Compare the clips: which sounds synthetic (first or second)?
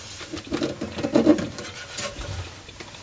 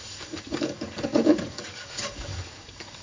second